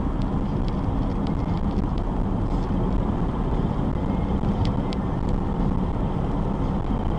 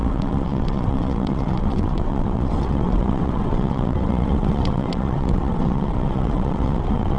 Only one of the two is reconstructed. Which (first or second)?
second